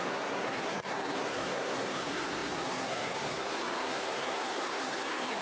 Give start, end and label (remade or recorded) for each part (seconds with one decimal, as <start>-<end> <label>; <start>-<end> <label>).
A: 0.0-5.4 remade